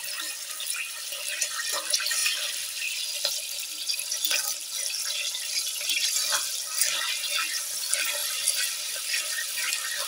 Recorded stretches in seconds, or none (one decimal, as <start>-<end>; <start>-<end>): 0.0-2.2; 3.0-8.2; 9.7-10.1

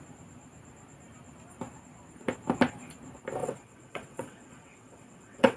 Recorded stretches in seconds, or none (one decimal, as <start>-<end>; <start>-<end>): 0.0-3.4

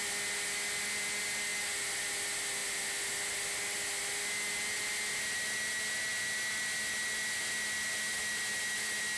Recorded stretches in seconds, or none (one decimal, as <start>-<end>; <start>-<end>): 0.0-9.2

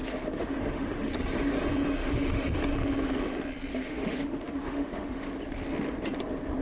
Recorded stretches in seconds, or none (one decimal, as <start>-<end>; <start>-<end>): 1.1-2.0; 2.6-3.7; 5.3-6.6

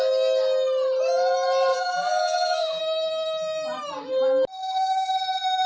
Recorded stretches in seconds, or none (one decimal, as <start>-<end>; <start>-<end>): 0.0-1.7; 2.8-4.6